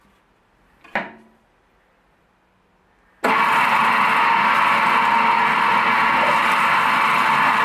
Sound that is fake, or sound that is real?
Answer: real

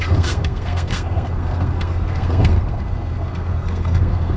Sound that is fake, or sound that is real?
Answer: fake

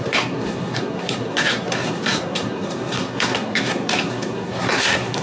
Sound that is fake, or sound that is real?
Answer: fake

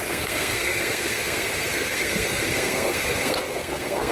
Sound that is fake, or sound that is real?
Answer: fake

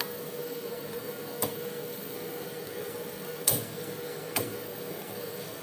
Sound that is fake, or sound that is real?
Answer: fake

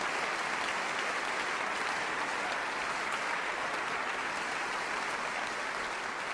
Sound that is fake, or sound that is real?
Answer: real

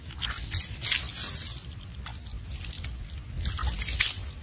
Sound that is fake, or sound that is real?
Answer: real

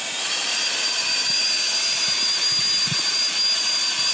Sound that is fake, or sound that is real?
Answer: real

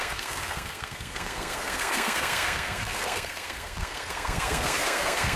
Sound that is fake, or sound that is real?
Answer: fake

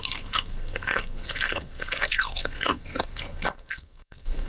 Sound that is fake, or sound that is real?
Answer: fake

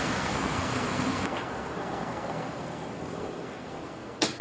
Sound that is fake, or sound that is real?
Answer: fake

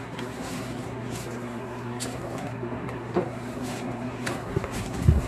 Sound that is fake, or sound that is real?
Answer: fake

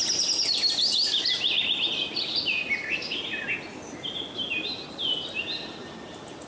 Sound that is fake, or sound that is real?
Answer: real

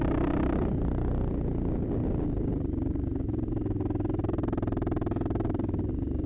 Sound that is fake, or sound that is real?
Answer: real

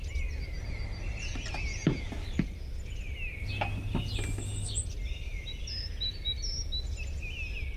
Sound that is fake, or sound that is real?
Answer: real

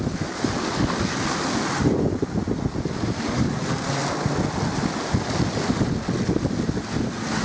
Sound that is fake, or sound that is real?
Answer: real